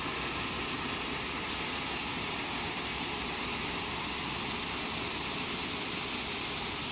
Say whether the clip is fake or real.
real